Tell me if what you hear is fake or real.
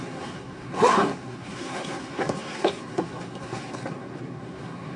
fake